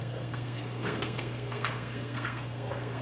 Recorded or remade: remade